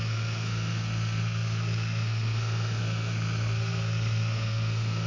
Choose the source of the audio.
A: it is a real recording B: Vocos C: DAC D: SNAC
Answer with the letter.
D